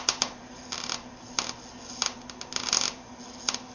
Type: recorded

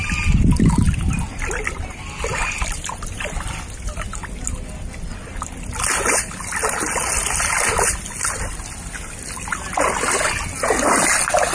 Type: recorded